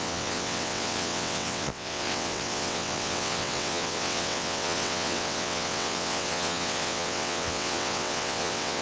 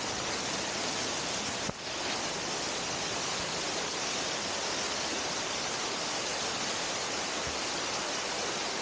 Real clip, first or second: second